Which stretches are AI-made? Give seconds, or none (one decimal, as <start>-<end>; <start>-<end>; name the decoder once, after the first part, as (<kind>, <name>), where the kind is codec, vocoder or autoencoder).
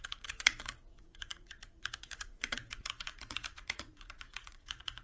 0.0-5.0 (vocoder, Vocos)